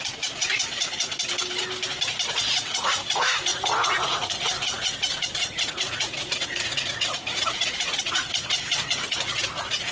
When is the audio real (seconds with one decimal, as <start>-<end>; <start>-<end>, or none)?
1.1-2.5